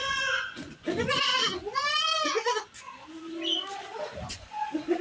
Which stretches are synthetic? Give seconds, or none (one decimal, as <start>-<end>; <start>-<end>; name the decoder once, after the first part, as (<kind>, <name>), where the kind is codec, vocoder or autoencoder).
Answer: 0.0-1.3 (vocoder, Vocos); 4.3-5.0